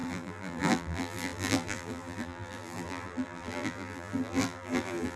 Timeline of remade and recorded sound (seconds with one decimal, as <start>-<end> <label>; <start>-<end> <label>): 0.0-5.2 remade